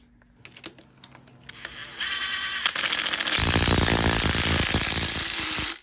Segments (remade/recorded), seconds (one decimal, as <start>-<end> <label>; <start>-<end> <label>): 0.0-5.8 recorded